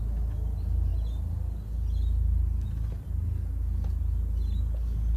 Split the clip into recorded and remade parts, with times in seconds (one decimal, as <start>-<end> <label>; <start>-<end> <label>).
0.0-5.2 recorded